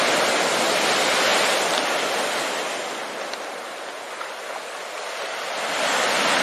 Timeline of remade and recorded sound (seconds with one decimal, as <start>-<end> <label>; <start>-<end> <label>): 0.0-6.4 recorded